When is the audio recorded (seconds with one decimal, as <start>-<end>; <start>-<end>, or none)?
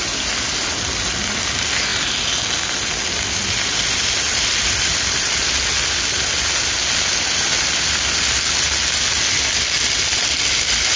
0.0-11.0